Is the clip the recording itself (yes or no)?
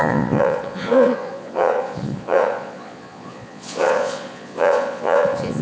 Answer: no